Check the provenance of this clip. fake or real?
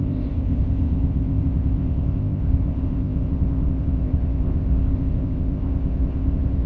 fake